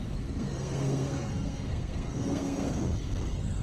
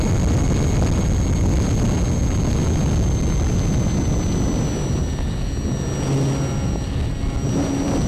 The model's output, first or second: first